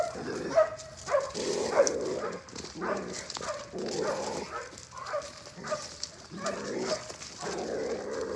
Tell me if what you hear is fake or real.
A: real